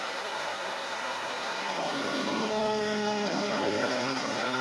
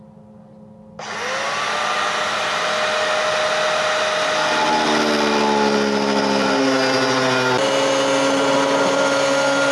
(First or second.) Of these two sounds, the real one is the second